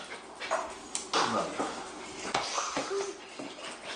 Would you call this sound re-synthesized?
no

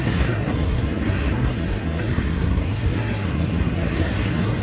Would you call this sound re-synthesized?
yes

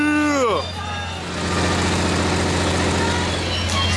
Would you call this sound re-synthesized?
no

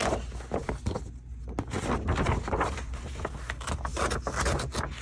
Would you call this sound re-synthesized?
no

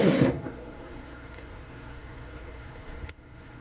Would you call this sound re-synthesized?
yes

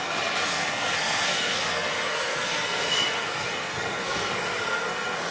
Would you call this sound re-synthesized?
yes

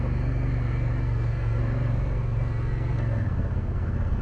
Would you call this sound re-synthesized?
yes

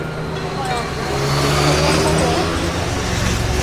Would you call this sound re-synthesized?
no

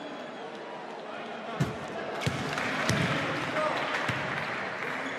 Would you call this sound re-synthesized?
no